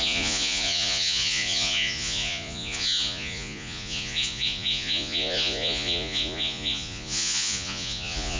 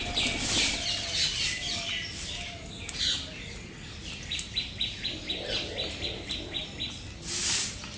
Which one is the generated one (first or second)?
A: first